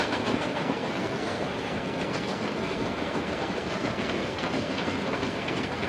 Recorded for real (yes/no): no